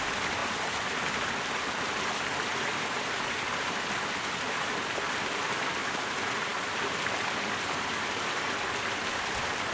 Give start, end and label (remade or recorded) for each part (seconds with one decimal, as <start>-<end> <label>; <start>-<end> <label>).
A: 0.0-9.7 recorded